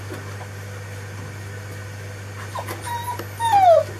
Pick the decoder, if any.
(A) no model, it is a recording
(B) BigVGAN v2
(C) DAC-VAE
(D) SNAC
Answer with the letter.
A